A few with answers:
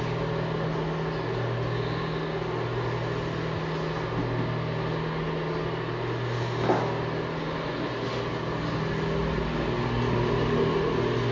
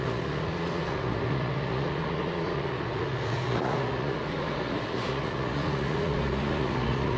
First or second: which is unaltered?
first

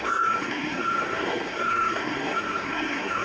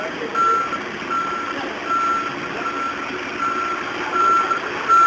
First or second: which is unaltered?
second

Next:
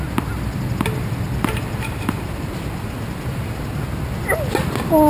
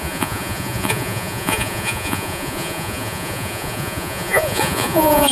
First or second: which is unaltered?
first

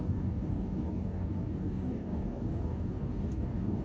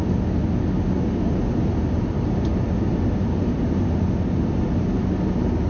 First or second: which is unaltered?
second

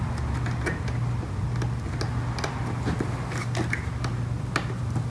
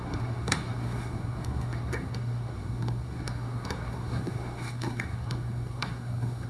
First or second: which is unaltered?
first